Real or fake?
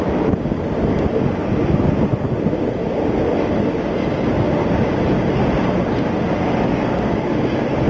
real